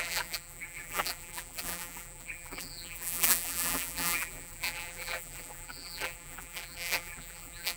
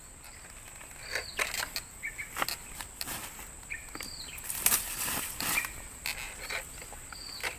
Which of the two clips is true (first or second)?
second